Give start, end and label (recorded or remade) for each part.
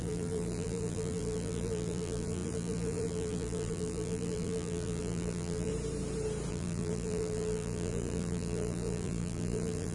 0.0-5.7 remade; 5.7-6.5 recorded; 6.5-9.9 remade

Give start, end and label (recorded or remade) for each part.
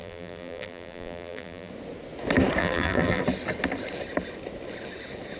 0.0-1.7 remade; 1.7-2.6 recorded; 2.6-3.2 remade; 3.2-5.4 recorded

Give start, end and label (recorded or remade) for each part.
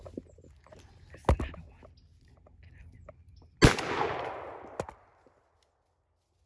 0.0-6.5 recorded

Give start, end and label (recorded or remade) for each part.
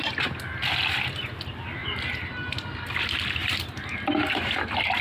0.0-1.8 recorded; 1.8-3.5 remade; 3.5-5.0 recorded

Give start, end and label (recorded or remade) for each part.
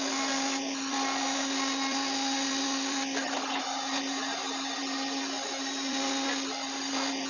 0.0-7.3 recorded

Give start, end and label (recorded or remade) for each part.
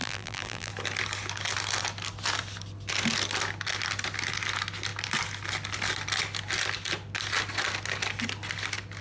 0.0-0.7 remade; 0.7-9.0 recorded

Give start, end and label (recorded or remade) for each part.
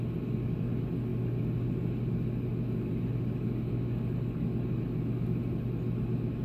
0.0-6.4 recorded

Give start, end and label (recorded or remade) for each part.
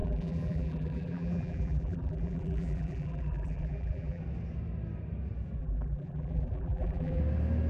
0.0-4.2 remade; 4.2-5.6 recorded; 5.6-7.2 remade; 7.2-7.7 recorded